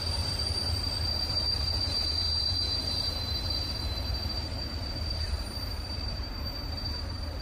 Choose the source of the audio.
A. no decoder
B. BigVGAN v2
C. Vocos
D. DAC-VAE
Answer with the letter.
B